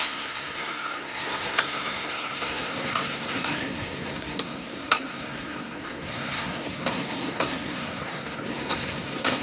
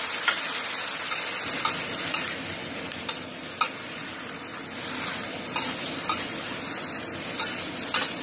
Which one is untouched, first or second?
second